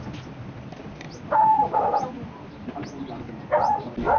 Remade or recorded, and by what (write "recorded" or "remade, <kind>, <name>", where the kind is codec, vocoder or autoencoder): recorded